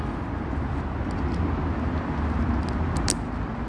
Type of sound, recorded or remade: recorded